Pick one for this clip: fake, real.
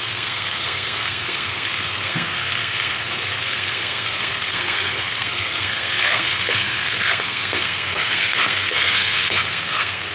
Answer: fake